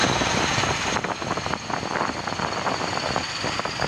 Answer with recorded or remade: recorded